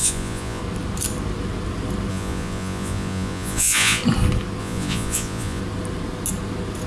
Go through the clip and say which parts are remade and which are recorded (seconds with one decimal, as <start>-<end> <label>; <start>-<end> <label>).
0.0-0.6 remade; 0.6-2.1 recorded; 2.1-4.0 remade; 4.0-4.6 recorded; 4.6-5.6 remade; 5.6-6.9 recorded